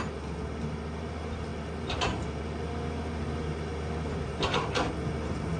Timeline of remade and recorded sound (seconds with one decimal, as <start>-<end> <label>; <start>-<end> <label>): 0.0-5.6 recorded

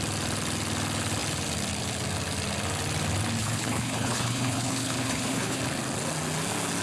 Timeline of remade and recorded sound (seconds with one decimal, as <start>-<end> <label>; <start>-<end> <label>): 0.0-3.4 recorded; 3.4-5.6 remade; 5.6-6.8 recorded

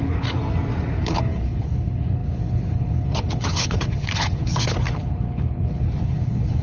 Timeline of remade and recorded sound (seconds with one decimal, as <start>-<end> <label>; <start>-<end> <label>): 0.0-0.4 remade; 0.4-1.0 recorded; 1.0-6.6 remade